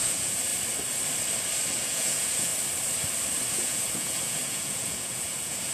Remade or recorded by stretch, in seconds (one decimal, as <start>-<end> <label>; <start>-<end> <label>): 0.0-0.5 remade; 0.5-1.7 recorded; 1.7-2.5 remade; 2.5-3.5 recorded; 3.5-5.7 remade